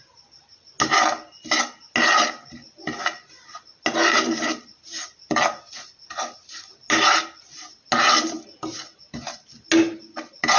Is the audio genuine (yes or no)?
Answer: yes